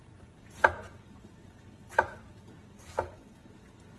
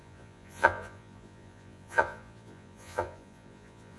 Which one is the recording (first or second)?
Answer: first